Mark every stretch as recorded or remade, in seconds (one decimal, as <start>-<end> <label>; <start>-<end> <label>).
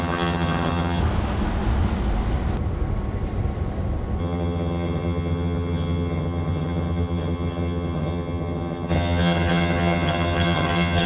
0.0-1.0 remade; 1.0-4.2 recorded; 4.2-11.1 remade